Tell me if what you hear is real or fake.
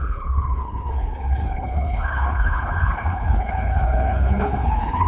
fake